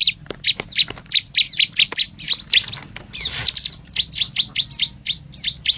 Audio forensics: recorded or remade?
recorded